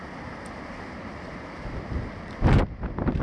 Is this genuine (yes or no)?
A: yes